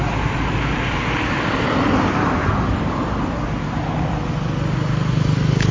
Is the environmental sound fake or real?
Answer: real